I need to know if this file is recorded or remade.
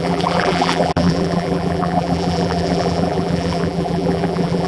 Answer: remade